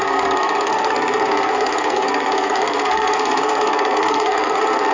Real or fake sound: fake